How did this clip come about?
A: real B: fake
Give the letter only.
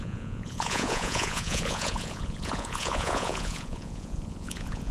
B